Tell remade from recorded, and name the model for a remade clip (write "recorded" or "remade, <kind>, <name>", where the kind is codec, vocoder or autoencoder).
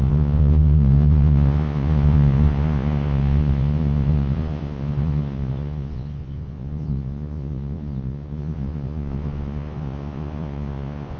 remade, vocoder, Vocos